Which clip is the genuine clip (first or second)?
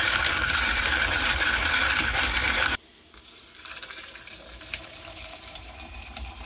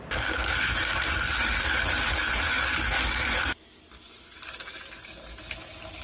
second